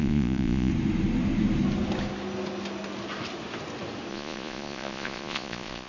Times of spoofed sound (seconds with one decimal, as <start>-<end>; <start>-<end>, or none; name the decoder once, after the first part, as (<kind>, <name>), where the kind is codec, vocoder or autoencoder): 0.0-0.7 (vocoder, Vocos); 4.1-5.9